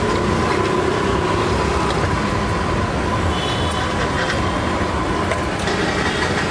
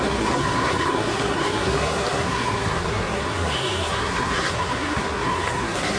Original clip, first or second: first